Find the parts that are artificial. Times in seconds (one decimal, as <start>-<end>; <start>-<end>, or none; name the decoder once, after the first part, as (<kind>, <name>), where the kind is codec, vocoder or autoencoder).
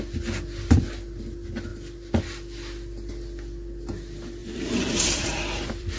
1.7-3.1 (vocoder, BigVGAN v2); 4.4-6.0